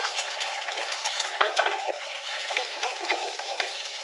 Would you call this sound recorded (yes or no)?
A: no